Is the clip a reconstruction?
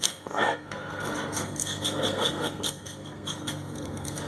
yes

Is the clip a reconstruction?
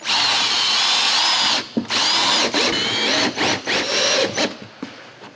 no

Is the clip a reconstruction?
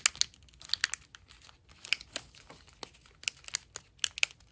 no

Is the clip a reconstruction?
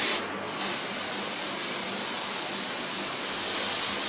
no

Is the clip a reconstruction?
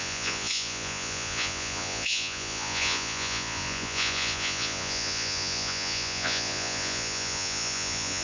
yes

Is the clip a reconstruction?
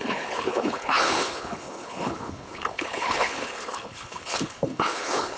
yes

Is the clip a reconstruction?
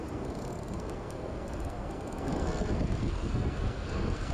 yes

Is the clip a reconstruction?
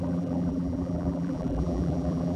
yes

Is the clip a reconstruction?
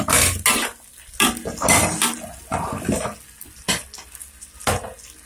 no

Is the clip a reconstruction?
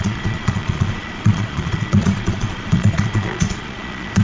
yes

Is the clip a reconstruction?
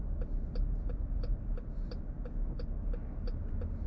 no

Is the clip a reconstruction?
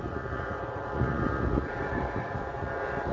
yes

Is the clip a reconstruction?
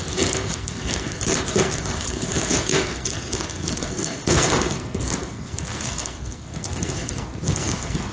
yes